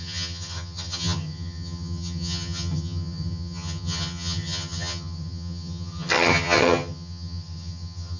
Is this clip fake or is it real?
fake